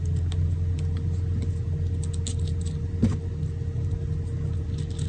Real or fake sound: real